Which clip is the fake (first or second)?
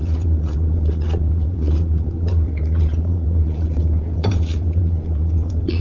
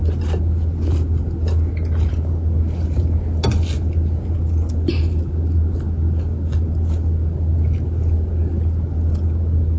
first